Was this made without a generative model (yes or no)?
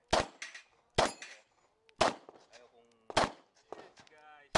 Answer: yes